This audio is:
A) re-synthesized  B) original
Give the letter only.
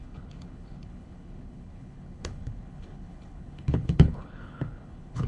A